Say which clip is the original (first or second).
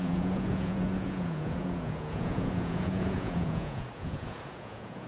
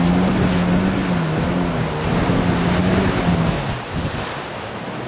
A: second